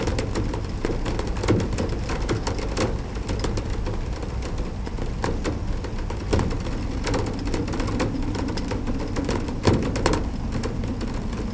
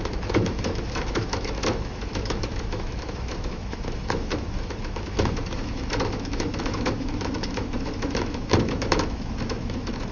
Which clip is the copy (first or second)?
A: second